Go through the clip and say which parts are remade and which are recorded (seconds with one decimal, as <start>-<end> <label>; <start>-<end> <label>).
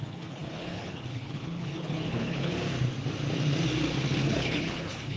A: 0.0-2.5 remade; 2.5-4.2 recorded; 4.2-5.2 remade